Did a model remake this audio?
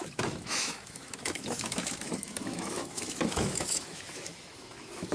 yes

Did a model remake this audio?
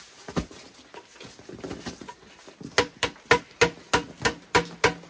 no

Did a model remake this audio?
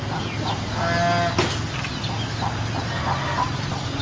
no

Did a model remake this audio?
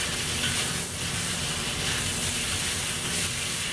no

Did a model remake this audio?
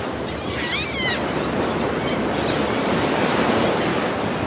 no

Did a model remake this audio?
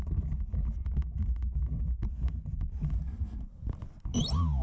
no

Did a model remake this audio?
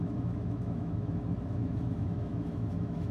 yes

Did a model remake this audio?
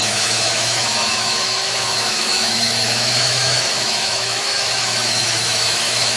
yes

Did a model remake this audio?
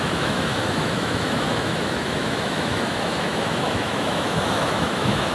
yes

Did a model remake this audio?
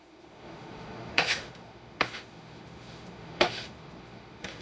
yes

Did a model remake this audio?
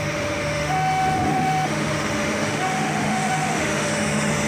yes